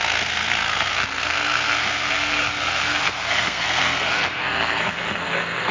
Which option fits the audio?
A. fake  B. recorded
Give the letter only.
A